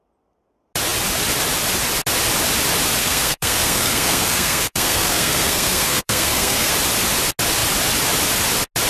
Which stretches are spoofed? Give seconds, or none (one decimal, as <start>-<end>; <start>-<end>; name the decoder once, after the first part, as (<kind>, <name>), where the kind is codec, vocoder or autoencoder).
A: 3.0-6.7 (codec, SNAC)